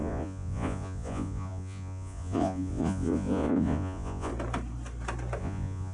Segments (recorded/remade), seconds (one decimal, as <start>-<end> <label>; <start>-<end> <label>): 0.0-4.3 remade; 4.3-5.4 recorded; 5.4-5.9 remade